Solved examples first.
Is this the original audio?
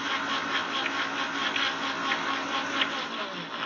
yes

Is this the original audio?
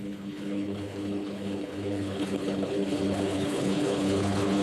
no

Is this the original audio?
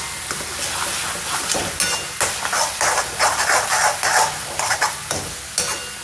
yes